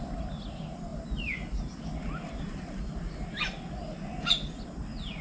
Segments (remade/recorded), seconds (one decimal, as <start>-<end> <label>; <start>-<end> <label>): 0.0-5.2 recorded